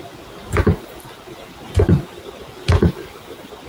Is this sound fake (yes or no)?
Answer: no